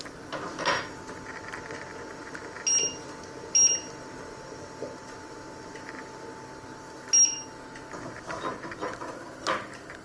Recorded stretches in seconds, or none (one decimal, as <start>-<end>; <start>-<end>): 0.0-10.0